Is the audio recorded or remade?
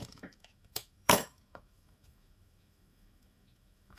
remade